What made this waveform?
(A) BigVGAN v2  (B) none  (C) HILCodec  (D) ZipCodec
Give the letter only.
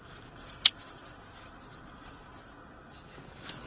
B